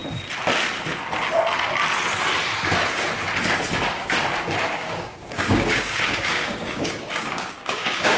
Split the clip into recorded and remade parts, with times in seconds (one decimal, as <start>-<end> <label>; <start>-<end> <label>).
0.0-4.7 recorded; 4.7-8.2 remade